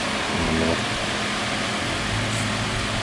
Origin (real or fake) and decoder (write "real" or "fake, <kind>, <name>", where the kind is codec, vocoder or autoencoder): real